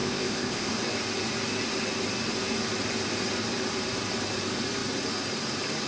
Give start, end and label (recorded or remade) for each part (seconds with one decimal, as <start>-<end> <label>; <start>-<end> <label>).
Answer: 0.0-0.7 remade; 0.7-5.9 recorded